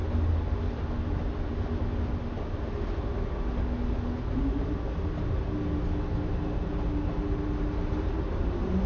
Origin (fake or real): real